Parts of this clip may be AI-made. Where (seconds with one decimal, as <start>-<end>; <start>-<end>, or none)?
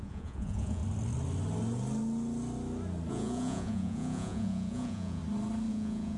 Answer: 0.0-0.8; 3.1-5.2; 5.7-6.2